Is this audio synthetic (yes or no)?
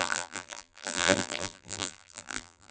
yes